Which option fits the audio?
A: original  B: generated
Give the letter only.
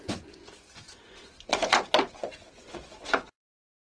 B